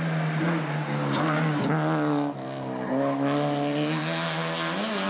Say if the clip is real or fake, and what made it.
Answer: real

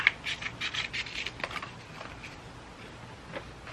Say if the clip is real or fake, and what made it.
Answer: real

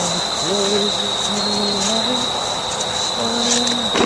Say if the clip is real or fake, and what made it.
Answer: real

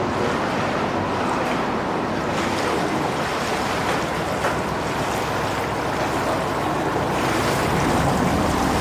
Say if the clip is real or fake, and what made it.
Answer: real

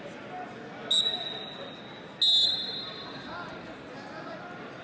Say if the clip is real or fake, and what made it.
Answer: real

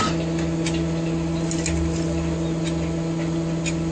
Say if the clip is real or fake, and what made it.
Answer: real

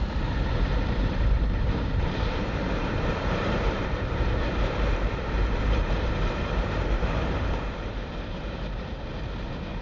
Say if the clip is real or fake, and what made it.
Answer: fake, vocoder, BigVGAN v2